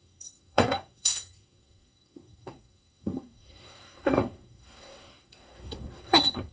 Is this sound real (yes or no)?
no